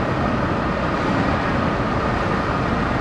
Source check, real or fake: real